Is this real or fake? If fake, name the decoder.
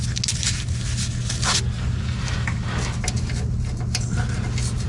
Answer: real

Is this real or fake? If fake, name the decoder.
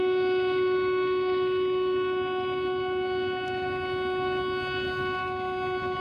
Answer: real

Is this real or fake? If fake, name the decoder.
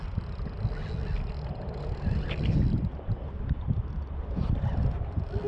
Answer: real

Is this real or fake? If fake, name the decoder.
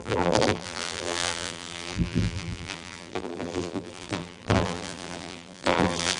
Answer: fake, vocoder, BigVGAN v2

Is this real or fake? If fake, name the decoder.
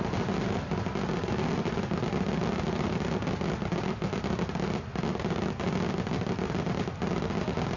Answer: real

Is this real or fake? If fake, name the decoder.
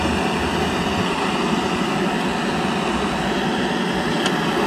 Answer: real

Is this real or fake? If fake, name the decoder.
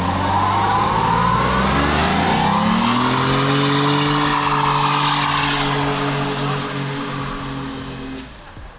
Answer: real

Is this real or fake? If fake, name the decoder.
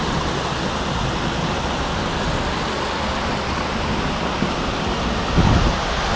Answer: real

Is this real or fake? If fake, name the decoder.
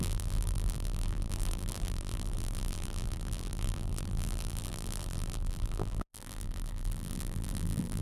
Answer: fake, vocoder, BigVGAN v2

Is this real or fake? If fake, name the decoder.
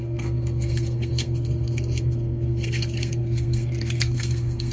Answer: fake, codec, SNAC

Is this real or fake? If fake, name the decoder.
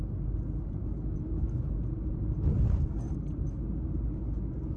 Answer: real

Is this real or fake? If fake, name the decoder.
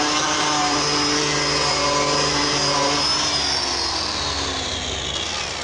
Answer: real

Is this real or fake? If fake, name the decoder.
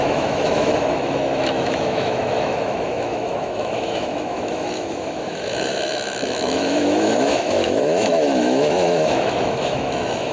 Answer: fake, autoencoder, DAC-VAE